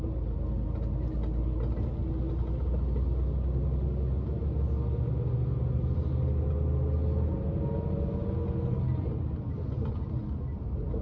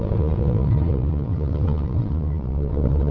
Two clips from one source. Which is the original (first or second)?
first